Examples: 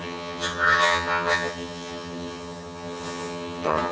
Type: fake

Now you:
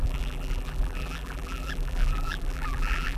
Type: fake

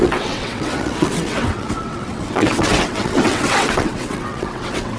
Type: fake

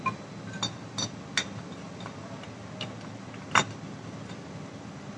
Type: real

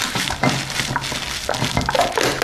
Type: real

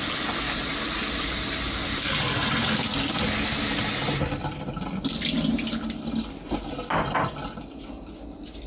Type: real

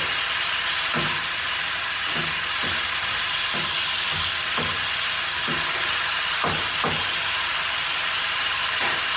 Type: real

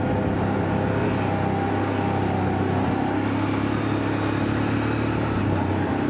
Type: real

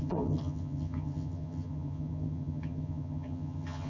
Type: fake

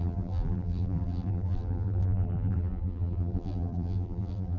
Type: fake